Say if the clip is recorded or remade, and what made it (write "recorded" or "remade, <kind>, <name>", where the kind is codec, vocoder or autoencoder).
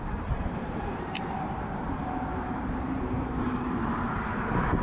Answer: remade, vocoder, BigVGAN v2